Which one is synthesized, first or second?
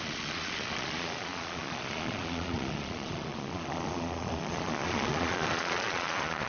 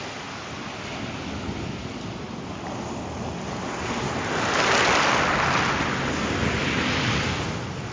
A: first